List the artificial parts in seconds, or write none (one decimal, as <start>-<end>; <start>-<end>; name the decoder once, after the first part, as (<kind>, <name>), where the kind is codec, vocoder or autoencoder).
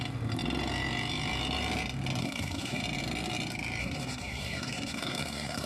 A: 2.2-2.8 (codec, SNAC); 3.8-5.7